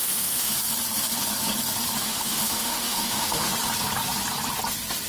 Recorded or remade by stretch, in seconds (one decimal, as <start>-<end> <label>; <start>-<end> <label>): 0.0-0.5 remade; 0.5-2.0 recorded; 2.0-3.5 remade; 3.5-5.1 recorded